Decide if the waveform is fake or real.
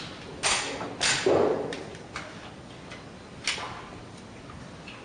real